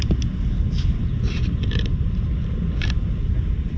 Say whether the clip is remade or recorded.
remade